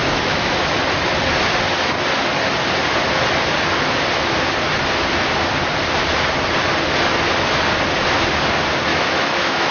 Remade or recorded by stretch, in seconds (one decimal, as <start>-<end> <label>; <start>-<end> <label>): 0.0-0.7 remade; 0.7-8.9 recorded; 8.9-9.7 remade

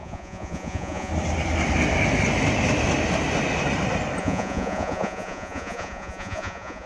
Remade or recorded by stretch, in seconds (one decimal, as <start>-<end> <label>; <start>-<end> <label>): 0.0-1.1 remade; 1.1-4.2 recorded; 4.2-6.9 remade

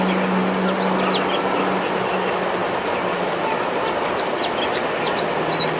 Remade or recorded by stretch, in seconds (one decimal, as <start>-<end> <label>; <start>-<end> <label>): 0.0-5.8 recorded

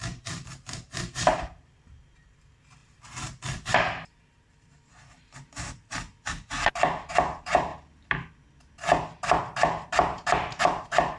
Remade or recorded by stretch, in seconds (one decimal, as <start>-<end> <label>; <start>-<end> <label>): 0.0-7.7 remade; 7.7-9.4 recorded; 9.4-11.2 remade